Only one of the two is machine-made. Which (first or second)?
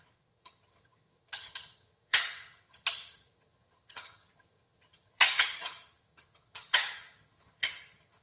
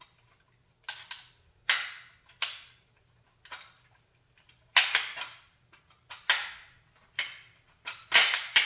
first